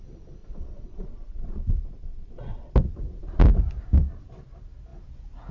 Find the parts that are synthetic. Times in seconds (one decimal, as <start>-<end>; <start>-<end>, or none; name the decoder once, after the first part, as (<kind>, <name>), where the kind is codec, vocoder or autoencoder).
0.4-2.7 (vocoder, Vocos)